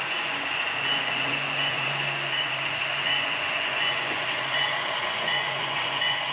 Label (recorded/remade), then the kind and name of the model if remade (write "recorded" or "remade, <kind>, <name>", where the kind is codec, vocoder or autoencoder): remade, vocoder, Vocos